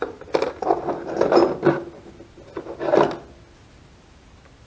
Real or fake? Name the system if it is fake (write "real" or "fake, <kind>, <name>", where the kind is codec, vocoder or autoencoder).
real